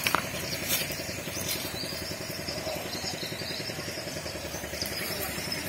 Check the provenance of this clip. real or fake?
fake